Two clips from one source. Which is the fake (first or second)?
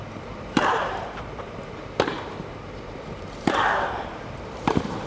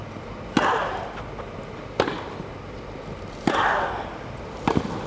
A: first